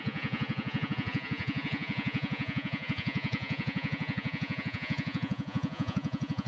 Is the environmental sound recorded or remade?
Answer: remade